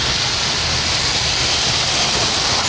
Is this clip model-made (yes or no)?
no